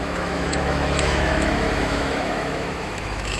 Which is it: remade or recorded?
remade